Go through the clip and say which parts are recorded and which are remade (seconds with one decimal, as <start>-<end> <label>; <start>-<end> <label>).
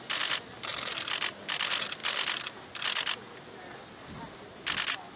0.0-5.2 recorded